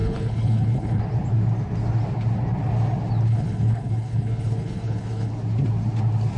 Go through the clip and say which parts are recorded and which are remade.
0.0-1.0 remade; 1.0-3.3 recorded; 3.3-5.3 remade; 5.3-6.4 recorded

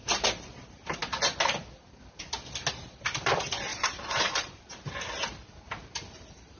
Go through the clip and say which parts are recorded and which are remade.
0.0-3.7 recorded; 3.7-4.9 remade; 4.9-6.6 recorded

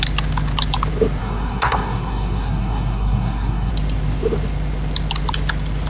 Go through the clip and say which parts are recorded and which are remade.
0.0-1.2 recorded; 1.2-3.7 remade; 3.7-5.9 recorded

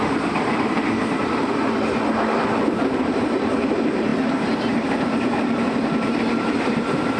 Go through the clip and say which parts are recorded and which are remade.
0.0-7.2 remade

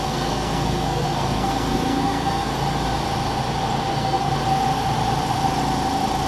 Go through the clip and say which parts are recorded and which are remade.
0.0-2.5 remade; 2.5-3.9 recorded; 3.9-4.3 remade; 4.3-6.3 recorded